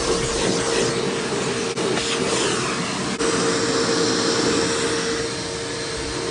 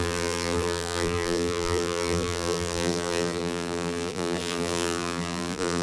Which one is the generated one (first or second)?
second